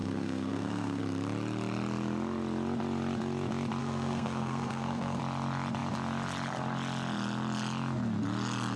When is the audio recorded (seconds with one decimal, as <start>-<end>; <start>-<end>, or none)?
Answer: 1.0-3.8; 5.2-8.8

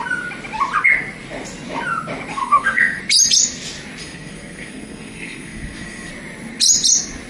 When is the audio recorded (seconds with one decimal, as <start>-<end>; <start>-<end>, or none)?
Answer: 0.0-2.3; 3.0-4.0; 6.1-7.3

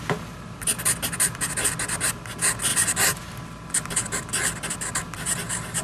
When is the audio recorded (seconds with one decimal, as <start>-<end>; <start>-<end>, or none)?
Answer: 0.0-5.8

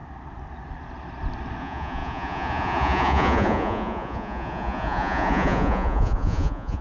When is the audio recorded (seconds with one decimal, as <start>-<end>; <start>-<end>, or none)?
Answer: 0.0-1.6

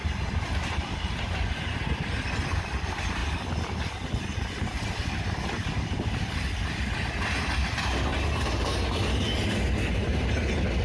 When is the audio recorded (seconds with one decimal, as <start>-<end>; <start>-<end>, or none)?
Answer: 1.2-8.1; 8.7-10.8